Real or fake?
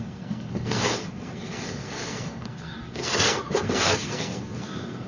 fake